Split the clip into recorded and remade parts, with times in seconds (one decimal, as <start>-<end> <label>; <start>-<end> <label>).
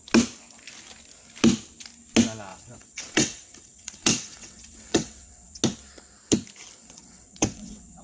0.0-2.5 recorded; 2.5-5.6 remade; 5.6-6.8 recorded; 6.8-8.0 remade